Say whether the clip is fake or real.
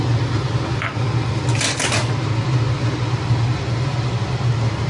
real